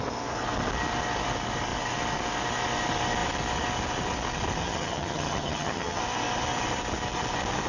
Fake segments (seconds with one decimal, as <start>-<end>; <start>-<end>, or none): 4.6-6.0